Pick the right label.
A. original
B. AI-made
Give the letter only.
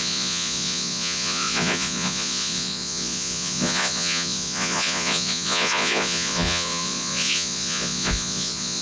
B